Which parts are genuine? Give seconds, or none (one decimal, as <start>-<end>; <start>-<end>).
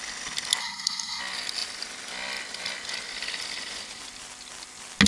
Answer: 0.0-0.6; 1.2-5.1